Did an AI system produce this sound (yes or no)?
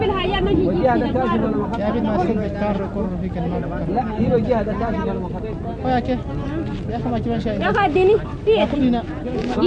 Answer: no